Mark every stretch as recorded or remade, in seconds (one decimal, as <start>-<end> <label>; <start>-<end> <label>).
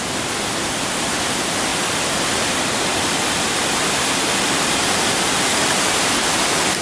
0.0-1.7 recorded; 1.7-5.8 remade; 5.8-6.8 recorded